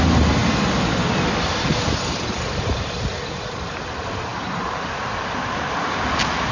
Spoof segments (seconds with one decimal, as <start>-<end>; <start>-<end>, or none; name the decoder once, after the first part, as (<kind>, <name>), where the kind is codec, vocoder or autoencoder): none